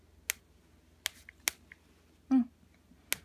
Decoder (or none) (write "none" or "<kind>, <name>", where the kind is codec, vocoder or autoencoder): none